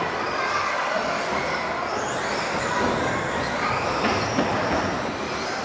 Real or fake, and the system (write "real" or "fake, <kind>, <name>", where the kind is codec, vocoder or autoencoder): real